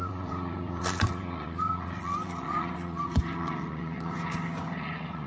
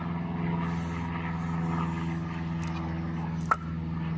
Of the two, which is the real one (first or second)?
second